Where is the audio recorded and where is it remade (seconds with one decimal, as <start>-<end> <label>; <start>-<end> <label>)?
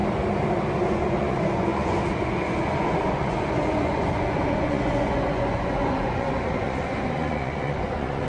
0.0-0.9 recorded; 0.9-8.3 remade